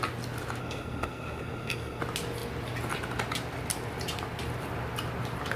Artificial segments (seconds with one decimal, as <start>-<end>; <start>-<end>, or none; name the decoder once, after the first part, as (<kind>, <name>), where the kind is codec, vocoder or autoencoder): 0.6-2.0 (codec, SNAC)